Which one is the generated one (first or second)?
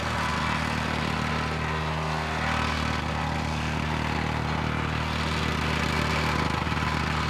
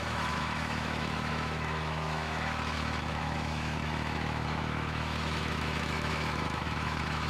second